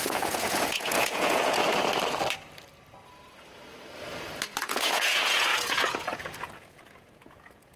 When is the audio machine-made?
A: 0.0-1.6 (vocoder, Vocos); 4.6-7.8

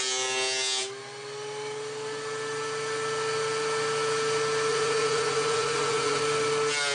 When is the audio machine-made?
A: 4.7-6.2 (vocoder, Vocos)